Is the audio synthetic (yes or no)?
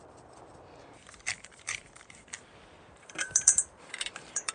yes